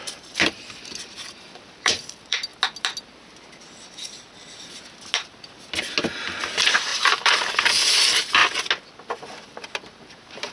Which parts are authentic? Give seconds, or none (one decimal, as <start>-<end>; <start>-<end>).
2.5-6.5; 8.4-9.2

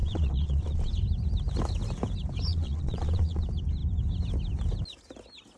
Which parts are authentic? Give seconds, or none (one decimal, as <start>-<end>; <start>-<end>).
0.9-2.5; 3.4-5.6